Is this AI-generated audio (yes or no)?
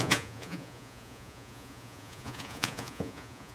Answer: yes